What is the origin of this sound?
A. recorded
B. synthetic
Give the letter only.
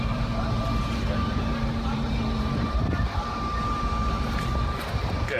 B